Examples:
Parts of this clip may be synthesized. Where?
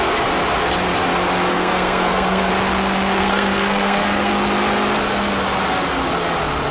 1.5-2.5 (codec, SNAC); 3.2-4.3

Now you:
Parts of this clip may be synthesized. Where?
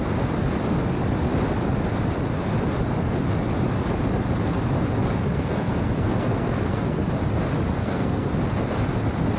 5.0-7.1 (codec, SNAC); 7.8-8.3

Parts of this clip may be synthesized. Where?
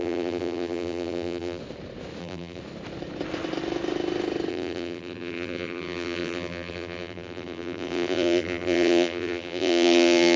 0.0-1.6 (vocoder, BigVGAN v2); 2.2-2.6; 4.5-10.4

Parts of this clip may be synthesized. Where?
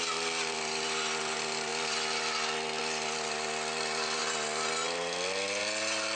none